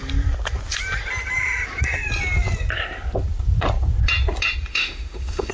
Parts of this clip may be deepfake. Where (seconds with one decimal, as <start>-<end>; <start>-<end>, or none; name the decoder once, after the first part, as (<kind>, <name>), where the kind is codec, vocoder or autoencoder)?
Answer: 4.7-5.5 (autoencoder, DAC-VAE)